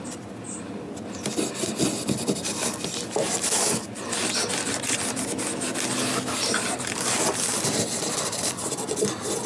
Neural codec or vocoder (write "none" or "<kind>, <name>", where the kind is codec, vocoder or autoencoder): none